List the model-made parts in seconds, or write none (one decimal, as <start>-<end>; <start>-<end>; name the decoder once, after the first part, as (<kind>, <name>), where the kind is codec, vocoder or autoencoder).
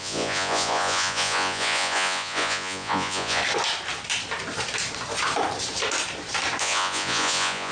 0.0-3.4 (vocoder, Vocos); 6.6-7.7